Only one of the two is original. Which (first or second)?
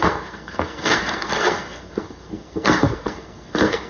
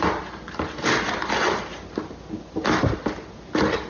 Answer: second